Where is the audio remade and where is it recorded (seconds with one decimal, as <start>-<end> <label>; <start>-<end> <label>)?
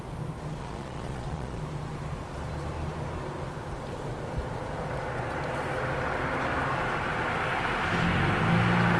0.0-0.6 recorded; 0.6-1.6 remade; 1.6-9.0 recorded